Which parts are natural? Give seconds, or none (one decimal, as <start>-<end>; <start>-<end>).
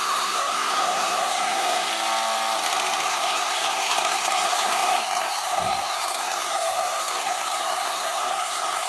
1.9-3.1